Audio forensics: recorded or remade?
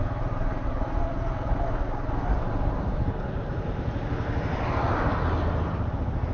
recorded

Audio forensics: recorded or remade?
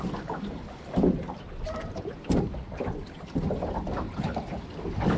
remade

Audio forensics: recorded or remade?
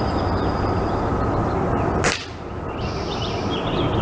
recorded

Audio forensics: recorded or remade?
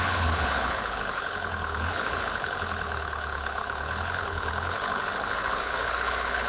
remade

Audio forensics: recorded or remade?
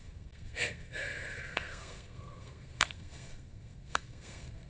remade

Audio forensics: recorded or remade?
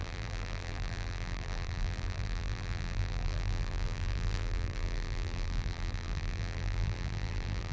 remade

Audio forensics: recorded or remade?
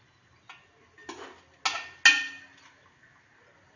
recorded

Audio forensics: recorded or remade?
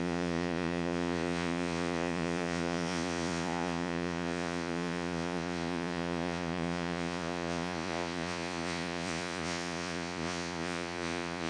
remade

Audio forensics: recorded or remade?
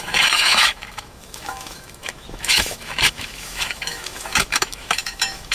remade